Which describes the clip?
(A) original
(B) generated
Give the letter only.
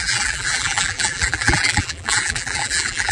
B